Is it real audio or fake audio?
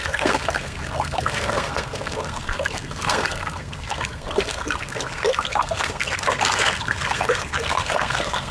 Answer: fake